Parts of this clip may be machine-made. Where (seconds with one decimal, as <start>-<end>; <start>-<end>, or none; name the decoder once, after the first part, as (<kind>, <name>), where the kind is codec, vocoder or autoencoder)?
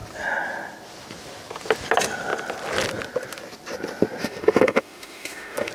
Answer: 4.2-5.7 (autoencoder, DAC-VAE)